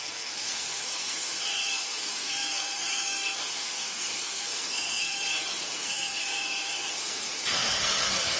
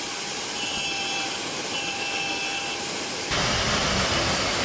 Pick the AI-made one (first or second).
first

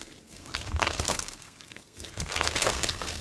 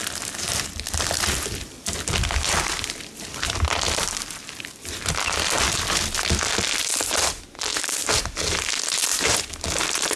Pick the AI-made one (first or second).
first